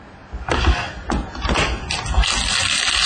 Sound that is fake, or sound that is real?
real